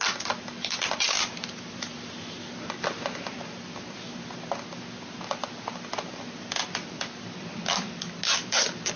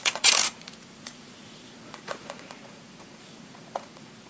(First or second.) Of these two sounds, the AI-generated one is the second